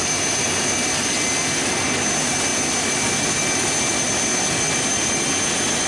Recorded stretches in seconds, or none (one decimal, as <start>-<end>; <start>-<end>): 0.0-5.9